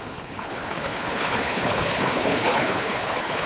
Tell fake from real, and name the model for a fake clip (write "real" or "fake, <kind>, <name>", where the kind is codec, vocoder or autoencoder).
fake, codec, HILCodec